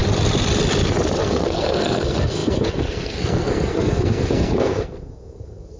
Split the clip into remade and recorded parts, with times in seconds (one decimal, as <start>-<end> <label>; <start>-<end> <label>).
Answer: 0.0-1.2 recorded; 1.2-5.8 remade